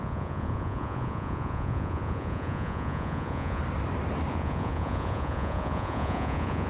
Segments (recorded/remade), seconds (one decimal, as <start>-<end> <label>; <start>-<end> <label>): 0.0-3.6 remade; 3.6-4.3 recorded; 4.3-6.7 remade